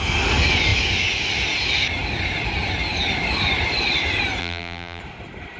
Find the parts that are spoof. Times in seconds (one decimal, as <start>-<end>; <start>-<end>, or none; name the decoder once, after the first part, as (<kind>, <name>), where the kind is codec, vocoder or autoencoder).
4.4-5.0 (vocoder, BigVGAN v2)